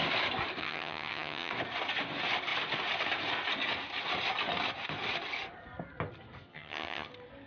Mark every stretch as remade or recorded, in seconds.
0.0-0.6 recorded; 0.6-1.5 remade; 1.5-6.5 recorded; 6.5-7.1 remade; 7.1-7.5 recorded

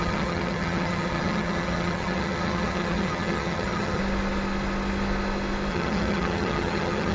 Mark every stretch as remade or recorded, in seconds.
0.0-4.0 remade; 4.0-5.7 recorded; 5.7-7.1 remade

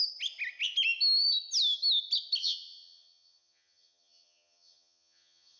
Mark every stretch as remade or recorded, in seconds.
0.0-2.4 recorded; 2.4-5.6 remade

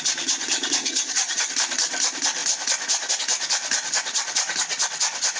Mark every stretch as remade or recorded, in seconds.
0.0-0.8 recorded; 0.8-1.5 remade; 1.5-5.4 recorded

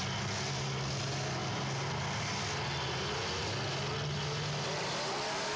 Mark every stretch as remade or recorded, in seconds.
0.0-5.6 recorded

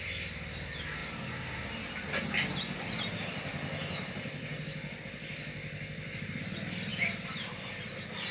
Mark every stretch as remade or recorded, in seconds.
0.0-8.3 recorded